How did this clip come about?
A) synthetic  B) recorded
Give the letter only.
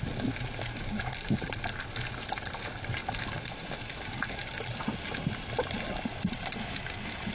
B